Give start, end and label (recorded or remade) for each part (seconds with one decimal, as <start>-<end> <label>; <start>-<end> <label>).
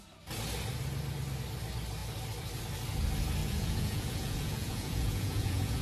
0.0-3.4 recorded; 3.4-5.8 remade